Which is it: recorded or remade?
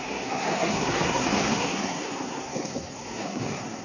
remade